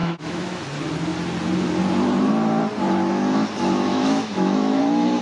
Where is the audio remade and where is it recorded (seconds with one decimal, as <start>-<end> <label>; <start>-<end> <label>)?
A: 0.0-0.6 remade; 0.6-3.9 recorded; 3.9-4.8 remade; 4.8-5.2 recorded